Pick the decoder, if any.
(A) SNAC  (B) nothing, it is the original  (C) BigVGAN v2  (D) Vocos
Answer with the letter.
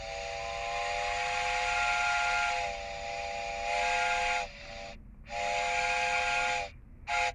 B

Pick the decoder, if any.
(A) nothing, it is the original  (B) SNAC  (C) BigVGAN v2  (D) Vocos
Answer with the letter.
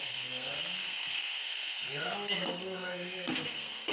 B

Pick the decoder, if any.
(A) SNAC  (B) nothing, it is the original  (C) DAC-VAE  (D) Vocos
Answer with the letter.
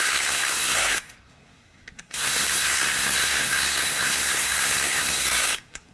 A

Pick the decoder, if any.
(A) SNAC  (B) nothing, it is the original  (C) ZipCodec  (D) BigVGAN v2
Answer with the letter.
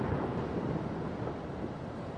B